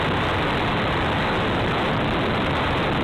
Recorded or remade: recorded